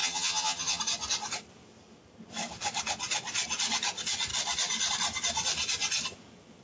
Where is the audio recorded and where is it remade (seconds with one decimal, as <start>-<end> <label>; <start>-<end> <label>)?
0.0-0.8 remade; 0.8-6.6 recorded